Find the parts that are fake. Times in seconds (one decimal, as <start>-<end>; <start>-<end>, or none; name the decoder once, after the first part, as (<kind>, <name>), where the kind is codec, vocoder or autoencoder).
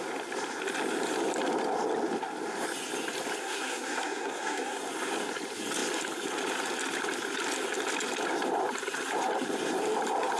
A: 3.4-4.8 (codec, SNAC)